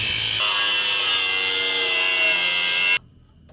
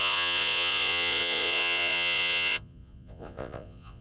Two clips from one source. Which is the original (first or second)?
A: first